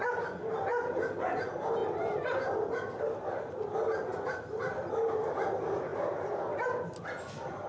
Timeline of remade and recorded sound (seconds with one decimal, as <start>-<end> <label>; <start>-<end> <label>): 0.0-0.7 recorded; 0.7-1.4 remade; 1.4-1.8 recorded; 1.8-3.0 remade; 3.0-4.1 recorded; 4.1-4.6 remade; 4.6-7.7 recorded